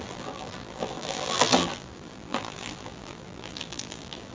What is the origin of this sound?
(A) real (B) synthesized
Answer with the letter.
B